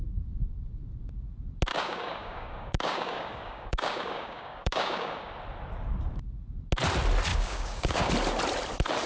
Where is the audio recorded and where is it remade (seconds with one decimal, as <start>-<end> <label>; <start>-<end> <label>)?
0.0-1.7 recorded; 1.7-5.2 remade; 5.2-7.3 recorded; 7.3-8.1 remade; 8.1-9.1 recorded